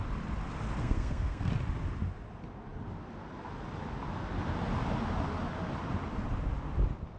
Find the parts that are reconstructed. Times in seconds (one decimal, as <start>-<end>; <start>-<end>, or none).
0.8-1.5